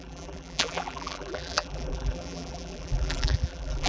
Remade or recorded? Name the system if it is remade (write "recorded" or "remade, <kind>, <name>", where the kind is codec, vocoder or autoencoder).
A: remade, vocoder, BigVGAN v2